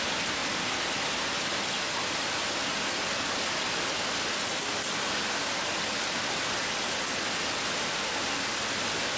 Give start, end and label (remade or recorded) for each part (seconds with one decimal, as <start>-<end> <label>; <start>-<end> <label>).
0.0-9.2 recorded